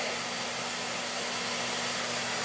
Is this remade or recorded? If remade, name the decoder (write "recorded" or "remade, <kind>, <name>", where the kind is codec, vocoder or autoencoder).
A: recorded